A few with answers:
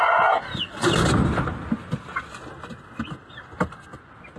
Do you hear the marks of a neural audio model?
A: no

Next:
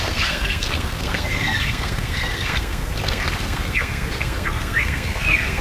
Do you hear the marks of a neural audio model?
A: yes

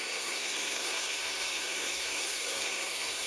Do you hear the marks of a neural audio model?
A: yes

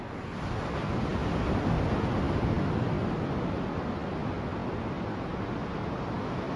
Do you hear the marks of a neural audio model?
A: no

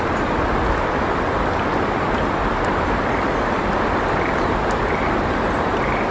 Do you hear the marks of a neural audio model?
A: no